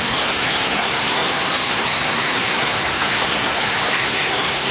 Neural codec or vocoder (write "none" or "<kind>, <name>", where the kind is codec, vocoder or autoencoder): codec, SNAC